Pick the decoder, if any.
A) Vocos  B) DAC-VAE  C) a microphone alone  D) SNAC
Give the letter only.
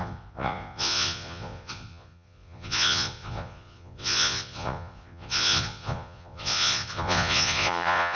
A